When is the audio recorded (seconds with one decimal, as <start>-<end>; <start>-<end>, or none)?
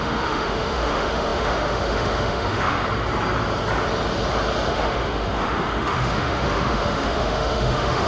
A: 2.8-4.7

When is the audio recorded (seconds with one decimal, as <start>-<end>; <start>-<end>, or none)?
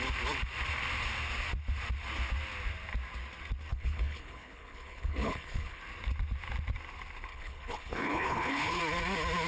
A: 0.0-3.7; 5.8-7.3; 8.8-9.5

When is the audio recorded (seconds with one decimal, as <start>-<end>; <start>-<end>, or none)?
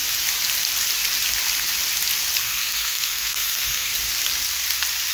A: 0.0-2.4; 3.9-5.1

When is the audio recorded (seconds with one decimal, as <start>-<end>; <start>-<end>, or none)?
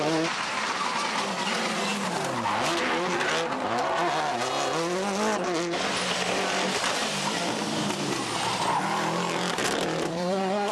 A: 0.0-10.1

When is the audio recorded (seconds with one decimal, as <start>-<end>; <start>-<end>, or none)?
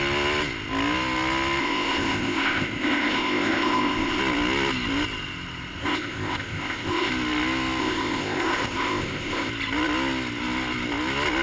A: 0.0-1.6; 4.2-5.8; 7.1-7.8; 9.5-11.4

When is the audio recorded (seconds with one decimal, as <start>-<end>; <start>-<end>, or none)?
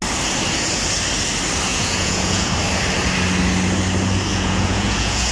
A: 0.0-1.7; 2.5-4.3